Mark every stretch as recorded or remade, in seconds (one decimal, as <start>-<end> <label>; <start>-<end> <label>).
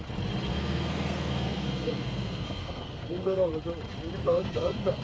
0.0-0.5 recorded; 0.5-3.5 remade; 3.5-4.2 recorded; 4.2-5.0 remade